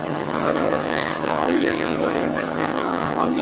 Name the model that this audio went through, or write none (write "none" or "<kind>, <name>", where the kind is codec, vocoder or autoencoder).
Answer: vocoder, HiFi-GAN